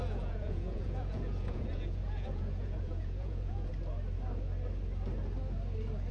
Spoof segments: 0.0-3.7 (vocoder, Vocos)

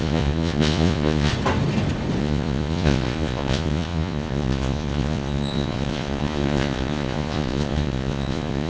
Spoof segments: 0.0-1.3 (vocoder, Vocos); 2.2-8.7

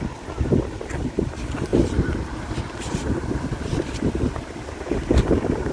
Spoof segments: none

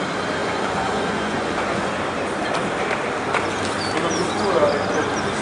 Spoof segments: 0.4-1.9 (vocoder, Vocos)

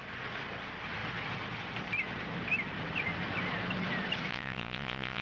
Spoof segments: 4.3-5.2 (vocoder, Vocos)

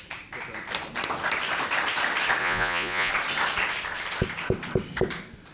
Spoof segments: 2.4-3.1 (vocoder, Vocos)

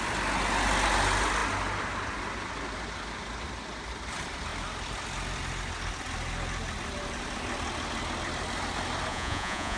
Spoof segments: 9.1-9.8 (vocoder, Vocos)

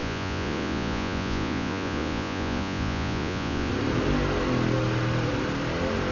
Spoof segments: 0.0-3.7 (vocoder, Vocos)